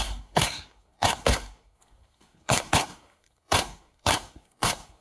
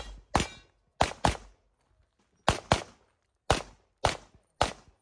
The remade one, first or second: first